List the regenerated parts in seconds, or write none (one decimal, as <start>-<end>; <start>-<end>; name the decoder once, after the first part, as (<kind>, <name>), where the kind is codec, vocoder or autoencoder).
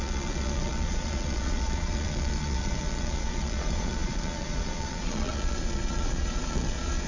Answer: 0.0-7.1 (vocoder, Vocos)